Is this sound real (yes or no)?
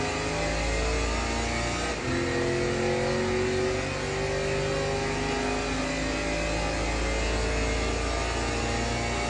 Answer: yes